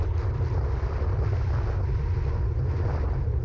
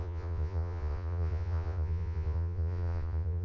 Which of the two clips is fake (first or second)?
second